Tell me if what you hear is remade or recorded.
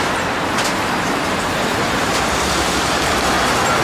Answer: remade